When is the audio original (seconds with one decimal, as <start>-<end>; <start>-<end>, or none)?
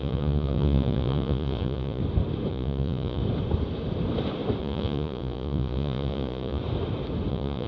2.0-2.5; 3.2-4.6; 6.6-7.3